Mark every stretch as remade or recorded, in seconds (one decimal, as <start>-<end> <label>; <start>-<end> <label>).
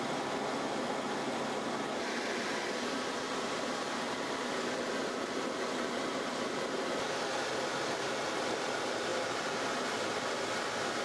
0.0-11.0 recorded